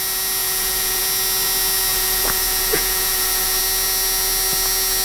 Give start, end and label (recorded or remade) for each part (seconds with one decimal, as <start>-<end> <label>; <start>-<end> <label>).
0.0-0.4 recorded; 0.4-1.0 remade; 1.0-1.9 recorded; 1.9-3.6 remade; 3.6-5.0 recorded

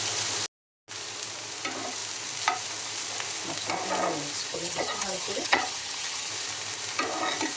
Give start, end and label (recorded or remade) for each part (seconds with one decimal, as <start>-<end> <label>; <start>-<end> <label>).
0.0-4.5 recorded; 4.5-6.3 remade; 6.3-7.6 recorded

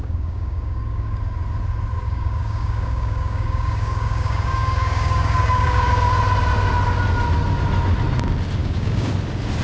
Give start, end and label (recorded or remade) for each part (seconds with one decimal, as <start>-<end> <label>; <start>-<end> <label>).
0.0-1.2 remade; 1.2-2.0 recorded; 2.0-5.9 remade; 5.9-8.6 recorded; 8.6-9.1 remade; 9.1-9.6 recorded

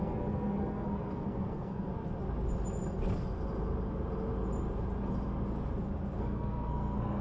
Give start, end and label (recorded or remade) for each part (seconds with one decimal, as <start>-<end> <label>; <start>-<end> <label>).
0.0-1.9 remade; 1.9-6.2 recorded; 6.2-7.2 remade

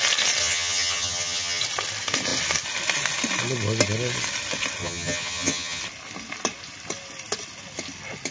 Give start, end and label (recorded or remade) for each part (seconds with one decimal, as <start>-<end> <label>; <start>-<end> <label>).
0.0-0.4 recorded; 0.4-1.6 remade; 1.6-4.8 recorded; 4.8-5.8 remade; 5.8-8.3 recorded

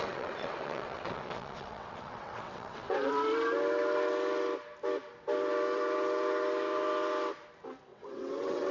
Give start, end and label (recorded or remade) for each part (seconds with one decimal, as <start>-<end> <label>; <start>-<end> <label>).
0.0-3.1 remade; 3.1-7.9 recorded; 7.9-8.7 remade

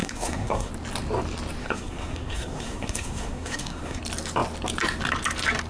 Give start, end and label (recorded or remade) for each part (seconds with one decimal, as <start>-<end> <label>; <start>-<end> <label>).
0.0-0.7 remade; 0.7-1.6 recorded; 1.6-4.0 remade; 4.0-5.7 recorded